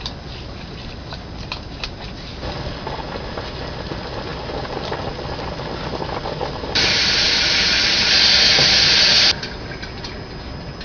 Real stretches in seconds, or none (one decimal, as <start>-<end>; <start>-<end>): 0.0-10.8